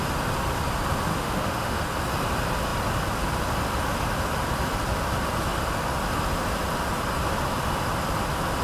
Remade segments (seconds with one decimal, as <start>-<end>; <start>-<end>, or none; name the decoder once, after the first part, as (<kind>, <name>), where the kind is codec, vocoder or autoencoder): 1.1-1.8 (autoencoder, DAC-VAE)